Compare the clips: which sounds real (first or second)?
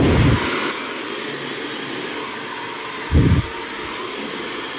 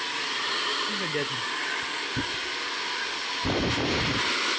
first